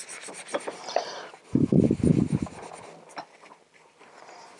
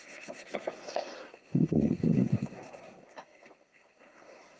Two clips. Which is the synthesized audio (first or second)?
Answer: second